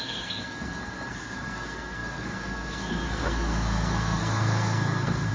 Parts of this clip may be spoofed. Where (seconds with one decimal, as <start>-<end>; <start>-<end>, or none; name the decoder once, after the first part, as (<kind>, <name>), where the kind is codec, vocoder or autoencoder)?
0.0-5.3 (codec, SNAC)